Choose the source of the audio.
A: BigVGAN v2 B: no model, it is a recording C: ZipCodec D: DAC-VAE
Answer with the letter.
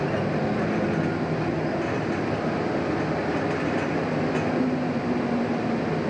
B